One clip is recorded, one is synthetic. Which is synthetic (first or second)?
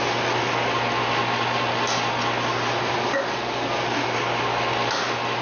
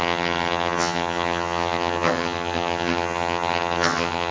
second